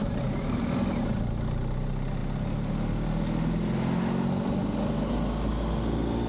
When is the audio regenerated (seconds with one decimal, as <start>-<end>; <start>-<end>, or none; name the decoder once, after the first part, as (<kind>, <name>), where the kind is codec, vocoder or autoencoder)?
0.0-0.6 (vocoder, BigVGAN v2)